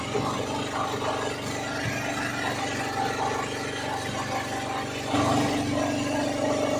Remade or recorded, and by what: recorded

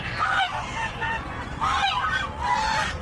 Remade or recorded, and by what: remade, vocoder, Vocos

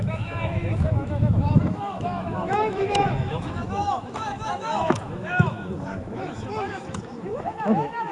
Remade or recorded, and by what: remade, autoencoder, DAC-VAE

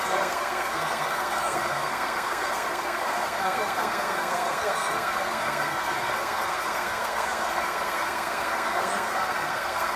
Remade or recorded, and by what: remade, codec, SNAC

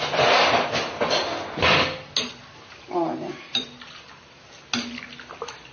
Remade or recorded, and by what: recorded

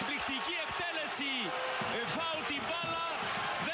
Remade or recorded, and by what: recorded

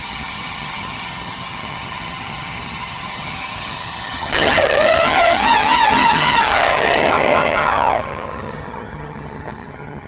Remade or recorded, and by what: remade, vocoder, HiFi-GAN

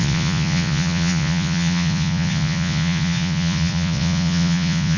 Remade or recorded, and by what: remade, vocoder, Vocos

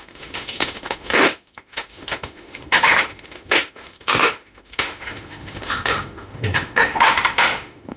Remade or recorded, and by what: remade, autoencoder, DAC-VAE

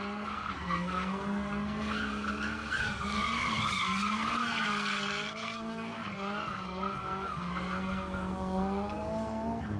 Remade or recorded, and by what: remade, codec, SNAC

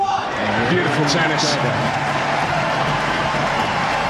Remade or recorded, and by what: remade, vocoder, BigVGAN v2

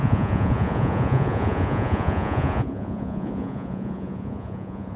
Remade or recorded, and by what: remade, vocoder, Vocos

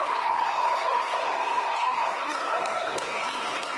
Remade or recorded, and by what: remade, codec, SNAC